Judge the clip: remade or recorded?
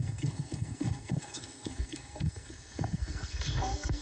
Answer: remade